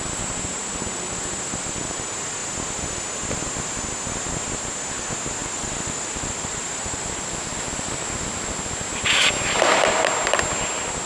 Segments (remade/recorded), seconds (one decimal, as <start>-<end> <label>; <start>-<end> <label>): 0.0-5.4 recorded; 5.4-8.6 remade; 8.6-11.1 recorded